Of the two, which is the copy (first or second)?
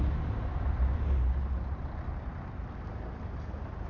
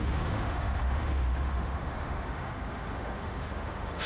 second